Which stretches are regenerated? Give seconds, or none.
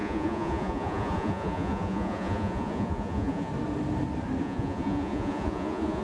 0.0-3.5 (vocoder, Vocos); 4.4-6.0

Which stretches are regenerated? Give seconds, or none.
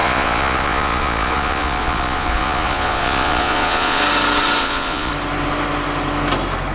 0.0-4.0 (vocoder, Vocos); 4.6-5.1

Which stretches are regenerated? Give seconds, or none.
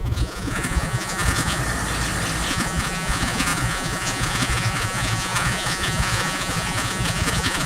0.0-1.6 (vocoder, Vocos); 2.5-7.7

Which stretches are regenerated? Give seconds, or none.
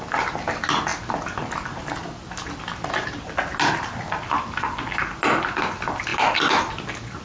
none